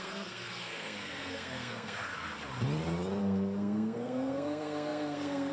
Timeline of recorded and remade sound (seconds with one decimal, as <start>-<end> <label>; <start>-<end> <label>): 0.0-2.1 remade; 2.1-3.2 recorded; 3.2-5.5 remade